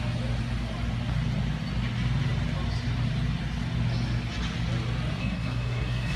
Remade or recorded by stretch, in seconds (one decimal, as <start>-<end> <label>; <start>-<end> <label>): 0.0-5.2 recorded; 5.2-6.2 remade